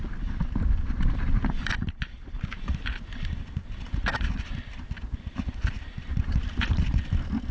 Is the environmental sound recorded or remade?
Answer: recorded